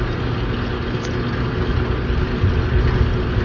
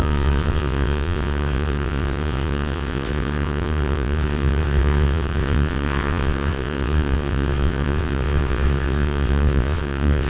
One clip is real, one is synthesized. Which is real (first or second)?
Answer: first